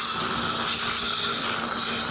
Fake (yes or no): no